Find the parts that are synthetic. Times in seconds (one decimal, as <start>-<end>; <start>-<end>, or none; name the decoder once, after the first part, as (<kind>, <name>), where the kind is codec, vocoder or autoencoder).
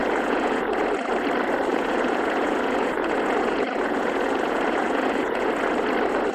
0.0-0.8 (vocoder, Vocos); 1.7-5.5